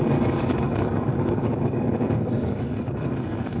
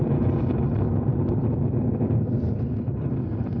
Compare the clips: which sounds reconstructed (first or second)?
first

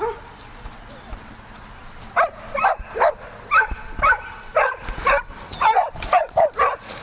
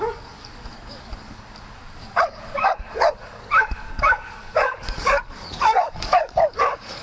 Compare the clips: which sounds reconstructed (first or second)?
second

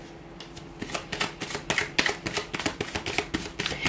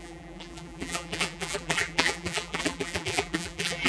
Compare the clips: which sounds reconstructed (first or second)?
second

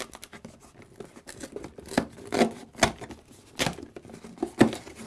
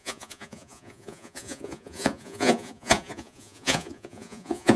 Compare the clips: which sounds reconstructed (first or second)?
second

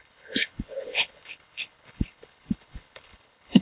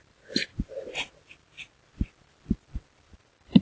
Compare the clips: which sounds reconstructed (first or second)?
first